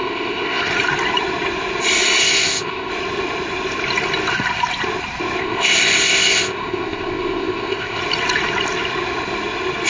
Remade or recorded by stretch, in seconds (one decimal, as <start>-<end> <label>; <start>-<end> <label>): 0.0-0.7 remade; 0.7-2.2 recorded; 2.2-2.9 remade; 2.9-5.4 recorded; 5.4-8.0 remade; 8.0-9.9 recorded